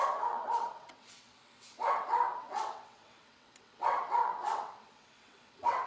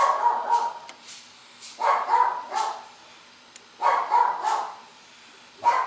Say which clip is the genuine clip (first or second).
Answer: second